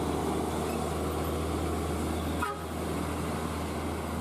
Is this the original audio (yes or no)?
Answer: yes